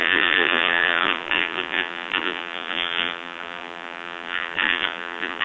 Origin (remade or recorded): remade